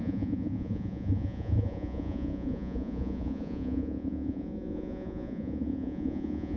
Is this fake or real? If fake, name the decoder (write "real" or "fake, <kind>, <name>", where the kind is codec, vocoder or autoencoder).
fake, vocoder, Vocos